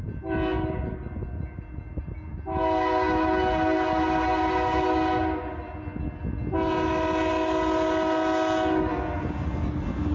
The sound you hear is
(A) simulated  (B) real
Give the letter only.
B